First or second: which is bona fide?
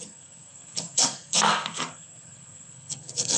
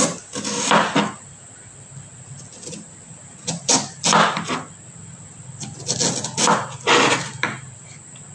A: second